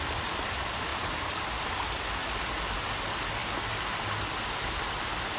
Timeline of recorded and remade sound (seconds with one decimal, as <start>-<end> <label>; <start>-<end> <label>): 0.0-5.4 recorded

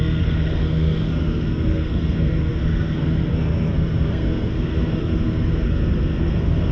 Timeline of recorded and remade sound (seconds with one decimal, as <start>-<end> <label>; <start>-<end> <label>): 0.0-6.7 remade

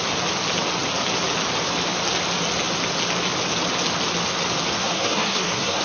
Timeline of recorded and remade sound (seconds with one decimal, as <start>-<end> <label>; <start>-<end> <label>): 0.0-4.8 recorded; 4.8-5.8 remade

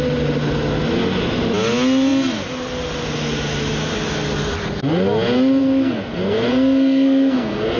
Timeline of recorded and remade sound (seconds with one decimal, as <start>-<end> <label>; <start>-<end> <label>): 0.0-5.6 recorded; 5.6-7.8 remade

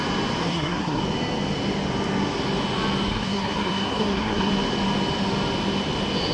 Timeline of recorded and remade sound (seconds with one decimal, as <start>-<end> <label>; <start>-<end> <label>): 0.0-0.4 recorded; 0.4-1.0 remade; 1.0-3.1 recorded; 3.1-4.5 remade; 4.5-6.3 recorded

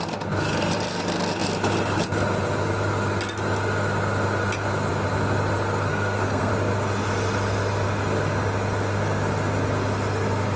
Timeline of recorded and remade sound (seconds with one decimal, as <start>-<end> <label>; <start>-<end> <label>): 0.0-5.9 recorded; 5.9-6.5 remade; 6.5-10.6 recorded